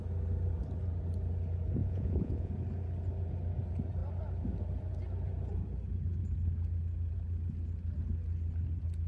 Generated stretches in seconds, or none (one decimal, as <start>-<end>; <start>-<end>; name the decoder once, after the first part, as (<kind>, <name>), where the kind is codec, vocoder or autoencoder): 1.8-2.5 (vocoder, Vocos)

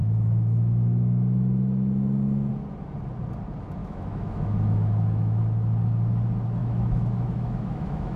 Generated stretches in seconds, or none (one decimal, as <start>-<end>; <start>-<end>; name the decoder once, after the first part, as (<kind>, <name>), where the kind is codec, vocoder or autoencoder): 0.0-2.5 (autoencoder, DAC-VAE); 3.8-5.4; 6.6-8.2

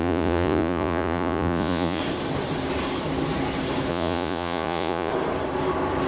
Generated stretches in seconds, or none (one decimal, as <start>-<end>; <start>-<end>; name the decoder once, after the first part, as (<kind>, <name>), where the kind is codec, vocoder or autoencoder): 0.0-2.0 (vocoder, Vocos); 3.9-5.1